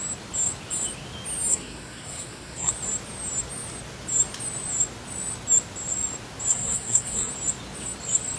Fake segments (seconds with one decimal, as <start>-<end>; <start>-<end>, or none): 1.5-2.7; 6.5-7.3